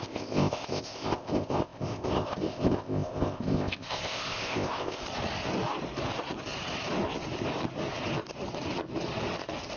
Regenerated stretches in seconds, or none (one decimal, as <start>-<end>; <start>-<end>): 0.0-5.0